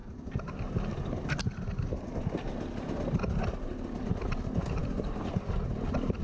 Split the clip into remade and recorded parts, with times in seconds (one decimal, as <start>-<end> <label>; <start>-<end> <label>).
0.0-6.2 recorded